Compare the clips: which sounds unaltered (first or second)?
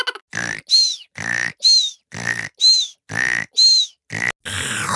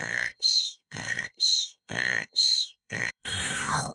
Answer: first